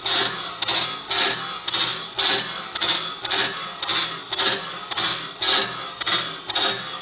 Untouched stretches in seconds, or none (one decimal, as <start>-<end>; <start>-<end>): 0.0-7.0